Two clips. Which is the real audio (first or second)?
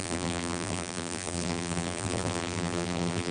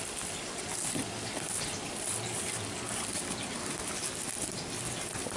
second